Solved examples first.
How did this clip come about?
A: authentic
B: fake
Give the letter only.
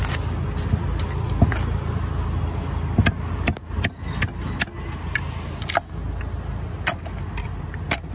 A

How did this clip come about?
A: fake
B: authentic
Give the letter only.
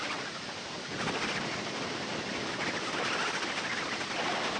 B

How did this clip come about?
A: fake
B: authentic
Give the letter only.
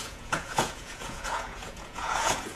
A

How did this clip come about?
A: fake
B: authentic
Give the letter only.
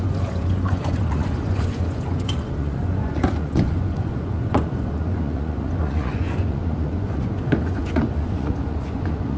A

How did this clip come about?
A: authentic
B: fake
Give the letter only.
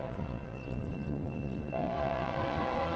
B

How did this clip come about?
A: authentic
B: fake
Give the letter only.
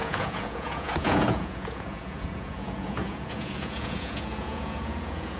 B